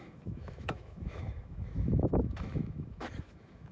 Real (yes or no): no